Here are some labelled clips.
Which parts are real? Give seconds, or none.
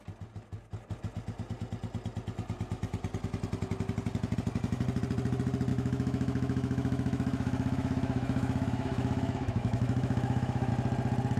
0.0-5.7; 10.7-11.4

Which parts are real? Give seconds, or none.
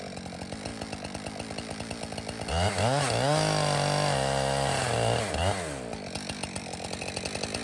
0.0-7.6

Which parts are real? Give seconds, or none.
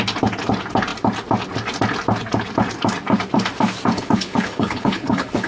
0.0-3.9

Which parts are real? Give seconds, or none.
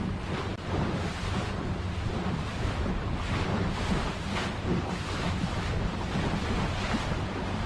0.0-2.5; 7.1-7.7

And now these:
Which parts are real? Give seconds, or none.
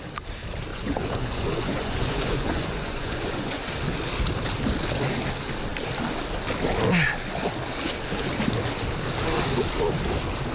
0.0-0.7; 3.6-10.5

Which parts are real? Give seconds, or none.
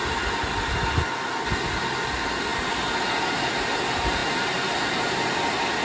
0.0-5.8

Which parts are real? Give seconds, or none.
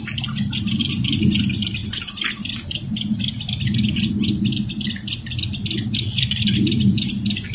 0.0-7.5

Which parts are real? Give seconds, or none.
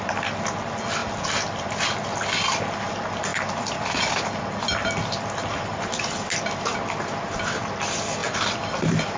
0.0-1.0; 1.8-3.3; 4.1-8.2; 8.7-9.2